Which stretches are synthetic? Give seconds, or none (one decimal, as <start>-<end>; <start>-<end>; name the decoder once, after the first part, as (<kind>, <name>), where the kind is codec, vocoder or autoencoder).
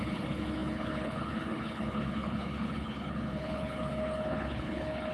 0.0-5.1 (codec, HILCodec)